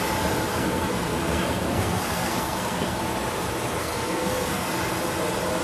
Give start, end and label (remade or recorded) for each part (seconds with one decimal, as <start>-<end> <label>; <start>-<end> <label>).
0.0-0.5 recorded; 0.5-3.0 remade; 3.0-3.8 recorded; 3.8-4.7 remade; 4.7-5.6 recorded